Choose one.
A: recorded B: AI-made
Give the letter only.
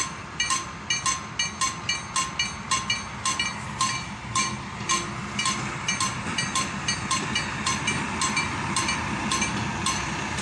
A